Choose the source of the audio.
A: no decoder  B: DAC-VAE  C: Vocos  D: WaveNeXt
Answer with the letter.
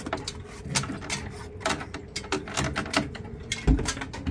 A